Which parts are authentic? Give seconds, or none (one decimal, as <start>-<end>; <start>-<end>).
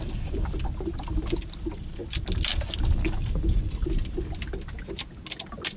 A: 0.0-5.8